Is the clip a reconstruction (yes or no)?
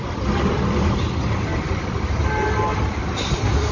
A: no